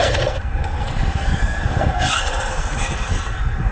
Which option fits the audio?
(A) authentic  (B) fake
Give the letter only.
B